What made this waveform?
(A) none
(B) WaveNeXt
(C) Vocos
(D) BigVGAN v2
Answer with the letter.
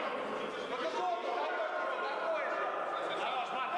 A